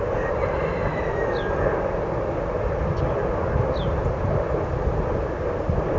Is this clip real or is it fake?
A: real